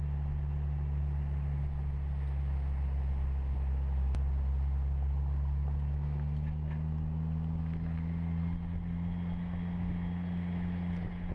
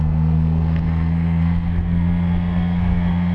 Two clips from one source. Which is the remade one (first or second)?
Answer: second